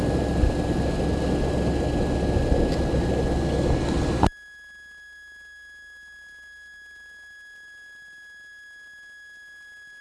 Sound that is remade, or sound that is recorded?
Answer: recorded